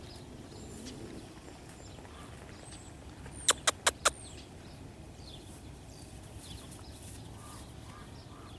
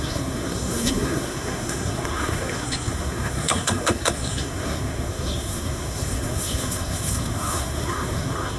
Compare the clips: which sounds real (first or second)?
first